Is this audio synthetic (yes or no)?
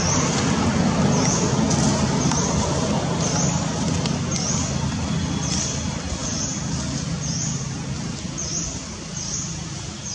no